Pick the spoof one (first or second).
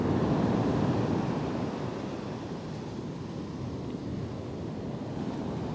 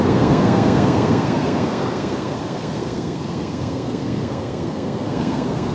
second